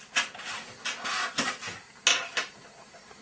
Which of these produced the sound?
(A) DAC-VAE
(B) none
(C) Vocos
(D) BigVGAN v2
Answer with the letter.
B